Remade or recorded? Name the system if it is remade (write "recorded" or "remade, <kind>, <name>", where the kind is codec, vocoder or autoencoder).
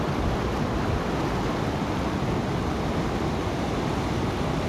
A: recorded